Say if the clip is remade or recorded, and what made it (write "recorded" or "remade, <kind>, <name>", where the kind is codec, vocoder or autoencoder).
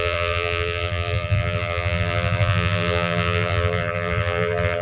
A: remade, vocoder, BigVGAN v2